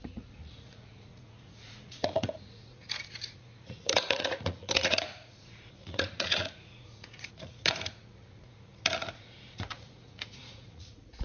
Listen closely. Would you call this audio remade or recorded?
remade